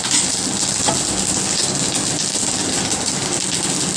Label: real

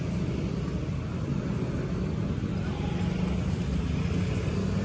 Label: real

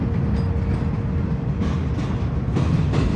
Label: real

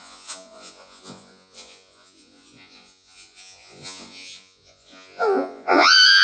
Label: fake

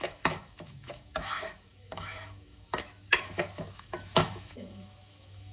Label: fake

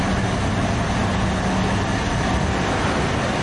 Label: real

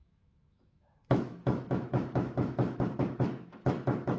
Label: fake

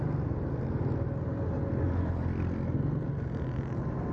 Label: real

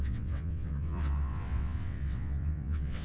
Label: fake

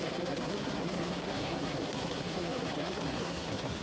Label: fake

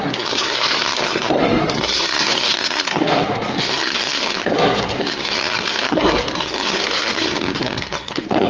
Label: fake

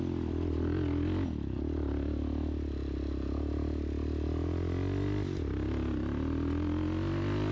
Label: real